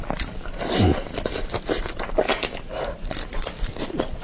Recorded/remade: recorded